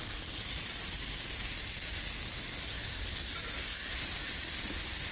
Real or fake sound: real